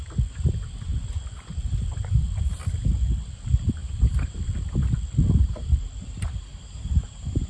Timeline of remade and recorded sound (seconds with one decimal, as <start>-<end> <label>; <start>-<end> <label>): 0.0-3.8 recorded; 3.8-4.5 remade; 4.5-6.5 recorded; 6.5-7.5 remade